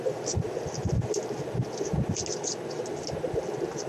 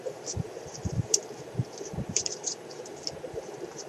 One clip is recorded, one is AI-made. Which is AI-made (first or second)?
second